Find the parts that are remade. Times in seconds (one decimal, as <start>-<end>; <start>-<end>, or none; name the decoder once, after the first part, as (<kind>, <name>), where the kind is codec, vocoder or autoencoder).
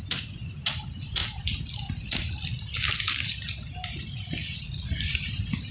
none